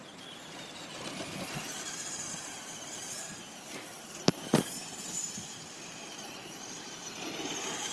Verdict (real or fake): fake